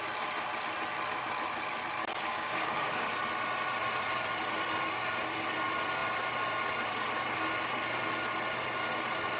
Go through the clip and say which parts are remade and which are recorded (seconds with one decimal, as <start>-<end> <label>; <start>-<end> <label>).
0.0-2.0 recorded; 2.0-3.1 remade; 3.1-9.4 recorded